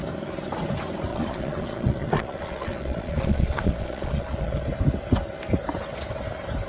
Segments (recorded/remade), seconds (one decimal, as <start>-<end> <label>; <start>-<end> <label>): 0.0-1.1 recorded; 1.1-4.7 remade; 4.7-6.7 recorded